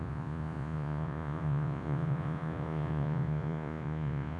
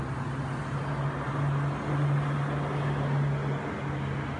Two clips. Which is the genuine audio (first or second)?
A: second